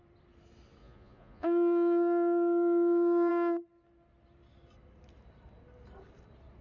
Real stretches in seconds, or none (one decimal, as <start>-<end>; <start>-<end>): 0.0-0.8; 3.3-6.6